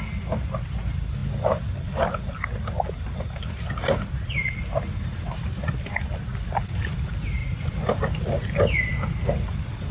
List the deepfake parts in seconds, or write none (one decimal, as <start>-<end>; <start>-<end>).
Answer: none